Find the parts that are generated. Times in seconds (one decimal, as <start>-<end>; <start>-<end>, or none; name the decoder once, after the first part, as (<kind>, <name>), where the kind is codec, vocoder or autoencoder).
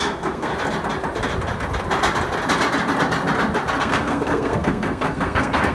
0.0-0.5 (codec, SNAC); 3.8-5.7